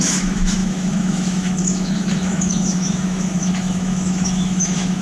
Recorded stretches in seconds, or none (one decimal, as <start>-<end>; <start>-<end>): none